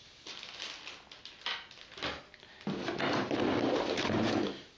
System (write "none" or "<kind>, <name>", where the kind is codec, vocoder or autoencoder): none